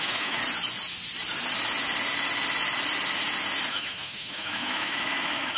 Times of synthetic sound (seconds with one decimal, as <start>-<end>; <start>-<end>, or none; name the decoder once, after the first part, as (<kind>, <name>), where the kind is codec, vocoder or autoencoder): 0.0-0.4 (autoencoder, DAC-VAE); 3.7-5.6